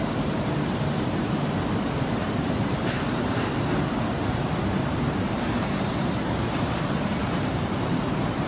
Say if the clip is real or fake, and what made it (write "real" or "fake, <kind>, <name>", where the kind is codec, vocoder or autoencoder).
fake, vocoder, BigVGAN v2